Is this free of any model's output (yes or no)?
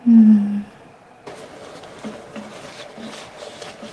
yes